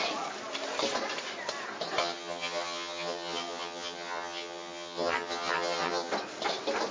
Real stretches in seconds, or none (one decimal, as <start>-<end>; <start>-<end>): 0.0-2.0; 6.1-6.9